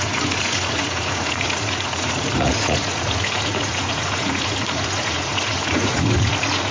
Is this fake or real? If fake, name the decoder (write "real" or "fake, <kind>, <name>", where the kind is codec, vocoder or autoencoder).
fake, vocoder, Vocos